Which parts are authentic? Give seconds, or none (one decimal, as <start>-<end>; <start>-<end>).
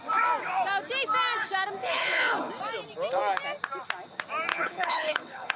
0.0-1.8; 2.5-4.5